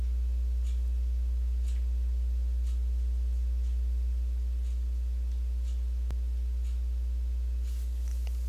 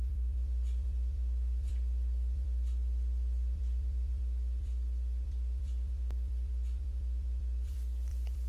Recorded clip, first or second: first